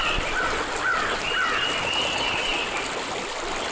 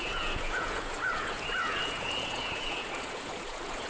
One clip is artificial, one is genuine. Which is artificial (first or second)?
second